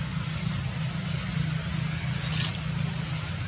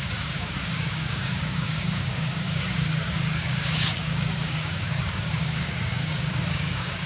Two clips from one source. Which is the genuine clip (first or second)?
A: first